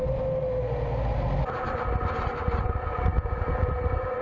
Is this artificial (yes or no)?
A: no